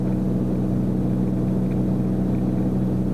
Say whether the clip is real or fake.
real